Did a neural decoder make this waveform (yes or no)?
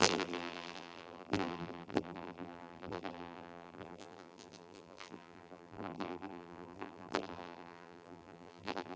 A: yes